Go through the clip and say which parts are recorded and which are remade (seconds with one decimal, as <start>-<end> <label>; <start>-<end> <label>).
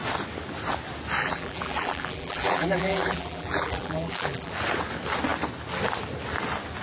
0.0-1.2 recorded; 1.2-4.5 remade; 4.5-6.8 recorded